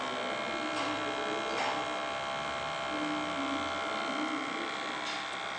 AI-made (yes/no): no